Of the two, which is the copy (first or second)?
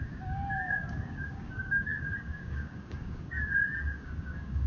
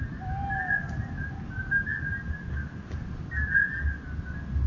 first